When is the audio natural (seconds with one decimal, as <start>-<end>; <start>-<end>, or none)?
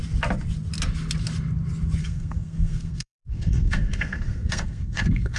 0.0-2.0